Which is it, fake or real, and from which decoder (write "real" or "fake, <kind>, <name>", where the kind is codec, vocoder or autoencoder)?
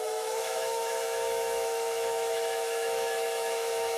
fake, autoencoder, DAC-VAE